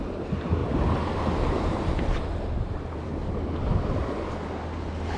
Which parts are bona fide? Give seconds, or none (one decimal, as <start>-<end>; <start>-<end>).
0.0-0.6; 3.7-5.2